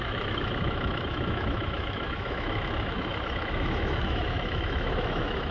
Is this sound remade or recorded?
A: remade